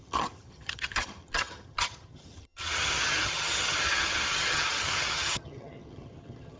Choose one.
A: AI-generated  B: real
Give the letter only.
A